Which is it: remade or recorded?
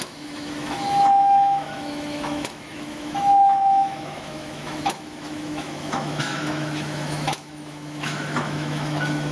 remade